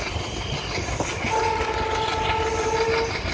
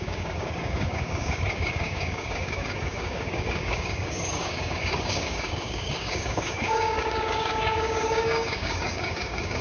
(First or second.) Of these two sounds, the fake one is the second